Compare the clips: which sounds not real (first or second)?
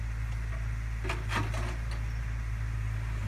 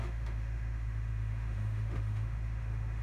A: second